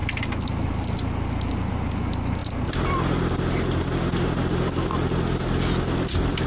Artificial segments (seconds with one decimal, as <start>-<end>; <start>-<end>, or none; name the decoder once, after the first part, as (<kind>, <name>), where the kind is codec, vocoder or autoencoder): none